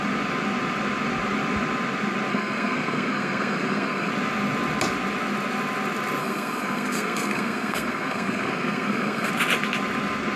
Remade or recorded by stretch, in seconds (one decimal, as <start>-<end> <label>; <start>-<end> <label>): 0.0-2.3 recorded; 2.3-4.1 remade; 4.1-6.2 recorded; 6.2-9.3 remade; 9.3-10.4 recorded